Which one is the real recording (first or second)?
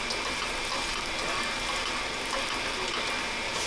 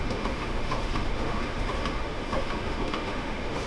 first